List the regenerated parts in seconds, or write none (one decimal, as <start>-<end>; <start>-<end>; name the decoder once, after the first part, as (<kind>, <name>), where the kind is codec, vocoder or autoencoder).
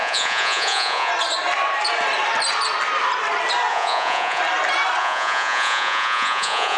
0.0-1.1 (vocoder, Vocos); 3.7-4.4; 5.0-6.8